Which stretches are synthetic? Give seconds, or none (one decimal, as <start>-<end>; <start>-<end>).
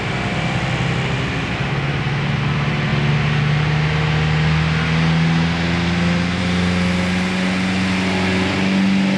none